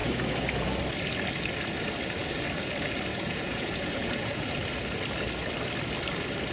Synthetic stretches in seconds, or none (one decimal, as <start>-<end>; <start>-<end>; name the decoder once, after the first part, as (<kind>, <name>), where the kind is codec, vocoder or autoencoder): 0.0-0.8 (vocoder, Vocos); 3.1-4.5